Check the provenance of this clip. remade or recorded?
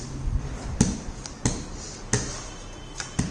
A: recorded